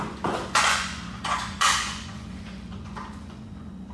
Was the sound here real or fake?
fake